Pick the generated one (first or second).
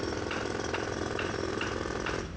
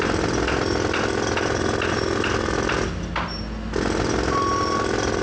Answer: first